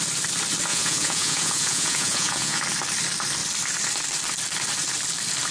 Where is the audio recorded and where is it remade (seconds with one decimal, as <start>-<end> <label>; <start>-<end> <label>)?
0.0-0.7 recorded; 0.7-2.6 remade; 2.6-5.5 recorded